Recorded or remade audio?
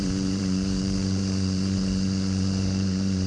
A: remade